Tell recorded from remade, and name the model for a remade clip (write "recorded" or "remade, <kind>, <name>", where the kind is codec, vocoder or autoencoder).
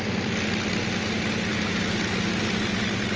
recorded